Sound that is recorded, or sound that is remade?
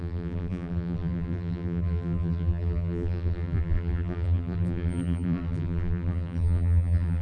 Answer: remade